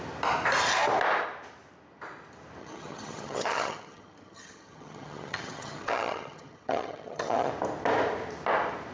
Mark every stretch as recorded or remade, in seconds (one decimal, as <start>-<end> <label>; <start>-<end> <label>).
0.0-2.6 recorded; 2.6-7.5 remade; 7.5-8.9 recorded